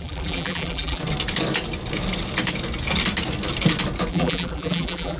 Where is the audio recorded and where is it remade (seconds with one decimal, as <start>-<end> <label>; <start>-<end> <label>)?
0.0-1.0 remade; 1.0-4.1 recorded; 4.1-5.2 remade